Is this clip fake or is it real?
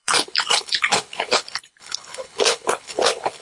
fake